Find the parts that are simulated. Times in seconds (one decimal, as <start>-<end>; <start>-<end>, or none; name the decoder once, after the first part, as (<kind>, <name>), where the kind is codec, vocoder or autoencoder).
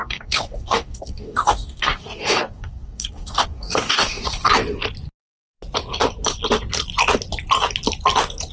0.0-4.5 (codec, DAC)